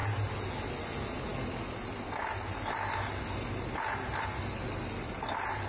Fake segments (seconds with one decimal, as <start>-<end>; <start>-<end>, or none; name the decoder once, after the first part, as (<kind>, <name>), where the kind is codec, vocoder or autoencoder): none